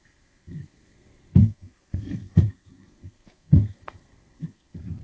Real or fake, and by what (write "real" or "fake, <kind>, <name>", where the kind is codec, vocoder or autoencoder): fake, codec, SNAC